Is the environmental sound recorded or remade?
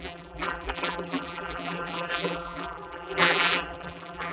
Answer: remade